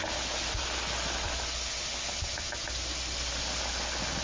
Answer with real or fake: real